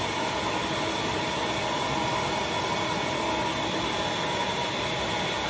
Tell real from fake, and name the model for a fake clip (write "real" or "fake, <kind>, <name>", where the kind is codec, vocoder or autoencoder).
real